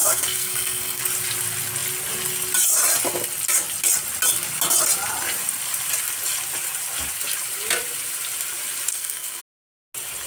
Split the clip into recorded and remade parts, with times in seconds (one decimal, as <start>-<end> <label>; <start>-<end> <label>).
0.0-1.0 remade; 1.0-8.9 recorded; 8.9-9.4 remade; 9.4-10.3 recorded